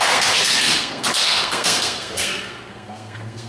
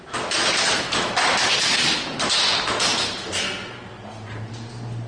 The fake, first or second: first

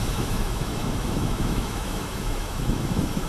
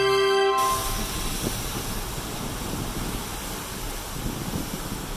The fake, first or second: first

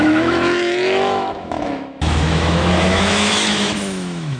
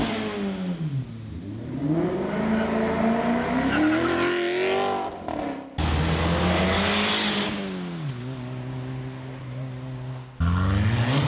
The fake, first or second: first